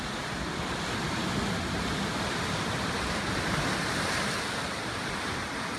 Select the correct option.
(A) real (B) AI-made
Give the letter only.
A